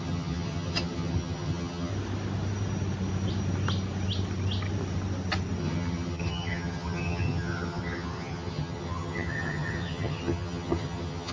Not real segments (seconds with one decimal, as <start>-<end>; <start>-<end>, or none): 0.0-1.9; 5.6-11.3